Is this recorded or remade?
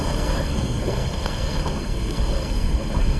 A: remade